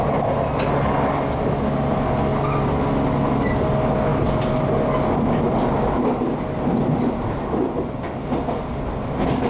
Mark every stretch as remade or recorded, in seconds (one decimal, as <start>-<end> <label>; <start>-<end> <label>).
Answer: 0.0-9.5 recorded